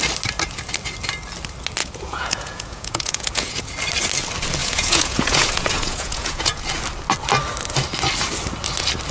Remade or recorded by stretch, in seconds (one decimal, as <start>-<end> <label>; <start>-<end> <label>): 0.0-1.8 recorded; 1.8-3.6 remade; 3.6-4.6 recorded; 4.6-6.6 remade; 6.6-9.1 recorded